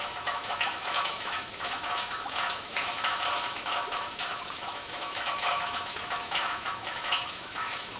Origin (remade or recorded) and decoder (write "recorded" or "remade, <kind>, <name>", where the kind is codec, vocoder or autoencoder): remade, autoencoder, DAC-VAE